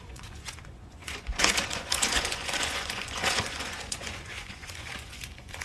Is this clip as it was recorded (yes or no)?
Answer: no